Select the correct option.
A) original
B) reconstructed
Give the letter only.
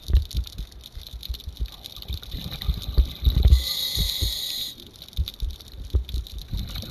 A